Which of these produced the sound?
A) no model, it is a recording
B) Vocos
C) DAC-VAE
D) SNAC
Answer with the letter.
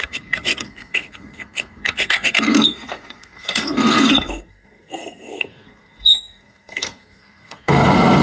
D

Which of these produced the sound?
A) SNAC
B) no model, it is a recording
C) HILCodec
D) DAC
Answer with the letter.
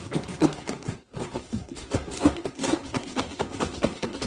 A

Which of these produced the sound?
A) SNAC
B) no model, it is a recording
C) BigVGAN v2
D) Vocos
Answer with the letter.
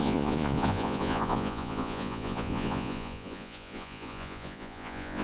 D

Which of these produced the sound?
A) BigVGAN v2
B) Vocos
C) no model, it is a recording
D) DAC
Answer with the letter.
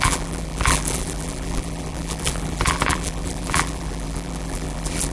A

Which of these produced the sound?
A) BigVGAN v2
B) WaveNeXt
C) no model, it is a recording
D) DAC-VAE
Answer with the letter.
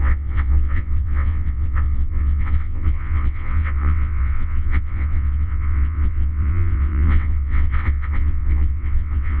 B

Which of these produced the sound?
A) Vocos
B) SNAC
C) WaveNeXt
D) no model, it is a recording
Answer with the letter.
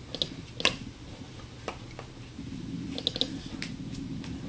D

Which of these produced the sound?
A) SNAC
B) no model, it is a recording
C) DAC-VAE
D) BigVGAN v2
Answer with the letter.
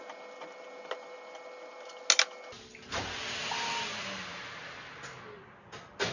B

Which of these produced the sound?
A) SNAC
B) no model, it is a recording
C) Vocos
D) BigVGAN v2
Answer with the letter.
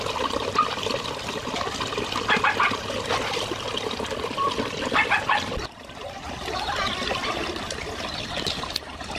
B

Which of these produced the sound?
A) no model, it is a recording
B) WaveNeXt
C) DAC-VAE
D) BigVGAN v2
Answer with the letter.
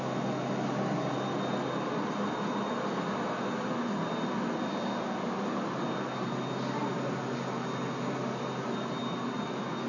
A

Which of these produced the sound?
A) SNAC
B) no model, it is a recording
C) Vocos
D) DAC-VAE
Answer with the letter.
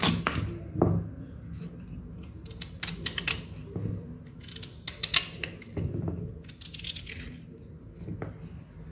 B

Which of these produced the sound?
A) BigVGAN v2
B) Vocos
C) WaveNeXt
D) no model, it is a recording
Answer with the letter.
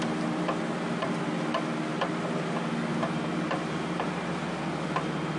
D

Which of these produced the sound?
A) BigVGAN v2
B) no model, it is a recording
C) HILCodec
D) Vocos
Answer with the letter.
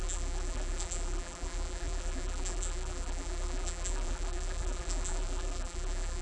A